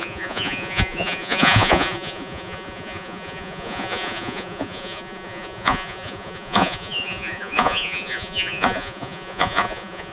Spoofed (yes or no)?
yes